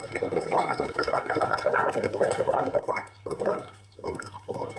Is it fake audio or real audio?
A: fake